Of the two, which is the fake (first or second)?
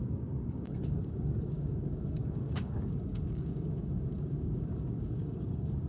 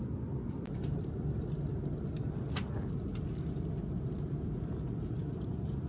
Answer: first